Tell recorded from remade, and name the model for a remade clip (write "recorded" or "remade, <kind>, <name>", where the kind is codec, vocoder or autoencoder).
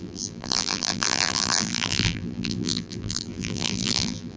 remade, vocoder, BigVGAN v2